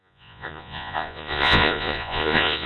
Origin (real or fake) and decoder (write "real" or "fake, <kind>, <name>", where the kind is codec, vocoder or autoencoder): fake, vocoder, Vocos